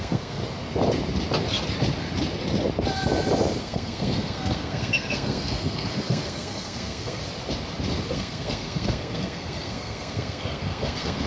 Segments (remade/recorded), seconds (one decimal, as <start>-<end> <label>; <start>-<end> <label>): 0.0-0.4 remade; 0.4-3.6 recorded; 3.6-7.2 remade; 7.2-8.1 recorded; 8.1-11.3 remade